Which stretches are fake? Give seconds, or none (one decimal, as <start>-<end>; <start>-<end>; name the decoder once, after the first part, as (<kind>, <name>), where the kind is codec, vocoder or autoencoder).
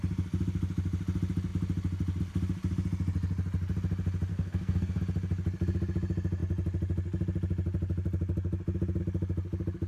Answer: 4.3-5.0 (codec, SNAC)